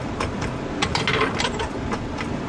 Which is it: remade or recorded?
recorded